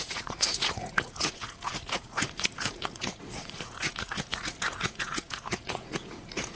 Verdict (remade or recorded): remade